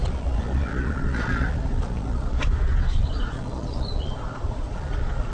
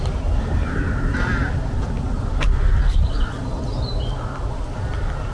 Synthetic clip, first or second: first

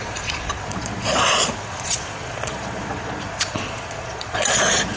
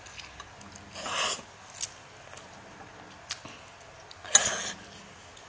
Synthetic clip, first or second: first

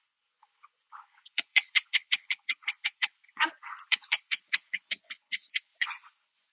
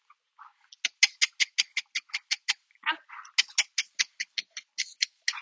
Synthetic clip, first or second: first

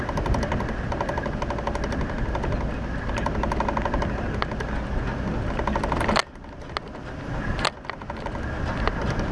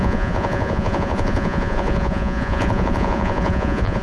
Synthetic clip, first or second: second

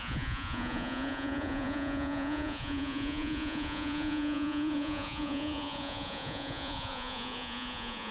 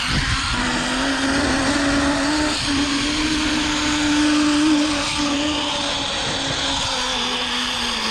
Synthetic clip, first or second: first